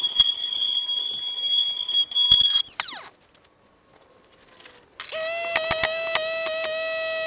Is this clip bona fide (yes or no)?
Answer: yes